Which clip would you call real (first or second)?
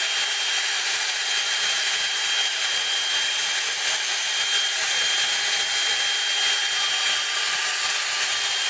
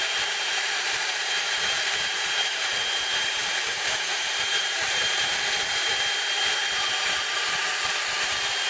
first